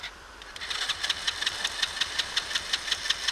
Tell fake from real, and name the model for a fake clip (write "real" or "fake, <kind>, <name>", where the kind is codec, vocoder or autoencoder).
real